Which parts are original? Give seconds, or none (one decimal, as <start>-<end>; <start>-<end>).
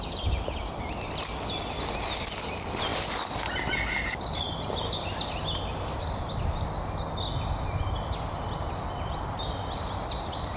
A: 0.0-10.6